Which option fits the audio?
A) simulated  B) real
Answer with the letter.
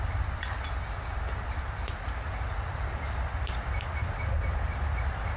B